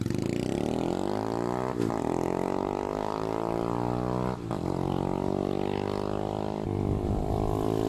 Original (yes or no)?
yes